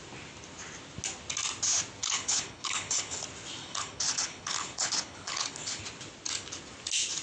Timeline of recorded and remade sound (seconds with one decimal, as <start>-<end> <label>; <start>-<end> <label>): 0.0-2.0 recorded; 2.0-3.2 remade; 3.2-3.6 recorded; 3.6-5.8 remade; 5.8-7.2 recorded